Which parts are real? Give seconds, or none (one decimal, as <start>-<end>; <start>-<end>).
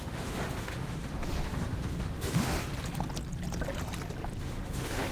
2.7-4.4